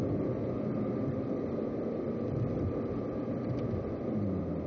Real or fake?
real